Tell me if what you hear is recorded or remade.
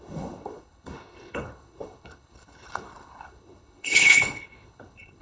remade